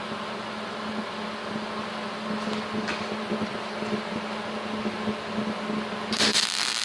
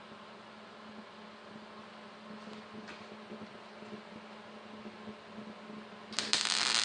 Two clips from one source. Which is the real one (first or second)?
second